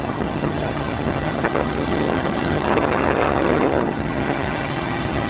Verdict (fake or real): fake